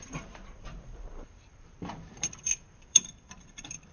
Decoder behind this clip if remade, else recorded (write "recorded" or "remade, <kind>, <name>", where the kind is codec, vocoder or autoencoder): remade, vocoder, BigVGAN v2